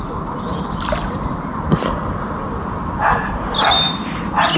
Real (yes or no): yes